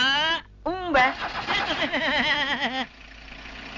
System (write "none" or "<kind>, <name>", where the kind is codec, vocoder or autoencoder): none